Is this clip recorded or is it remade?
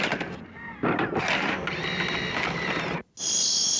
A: recorded